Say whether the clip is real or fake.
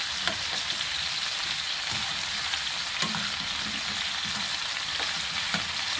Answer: real